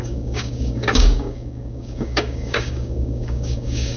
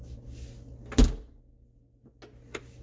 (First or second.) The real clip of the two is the second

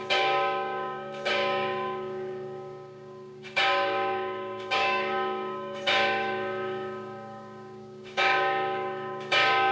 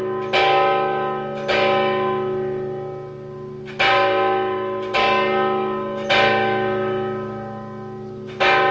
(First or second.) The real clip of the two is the second